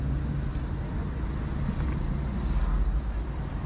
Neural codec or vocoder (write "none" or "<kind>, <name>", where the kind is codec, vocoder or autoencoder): none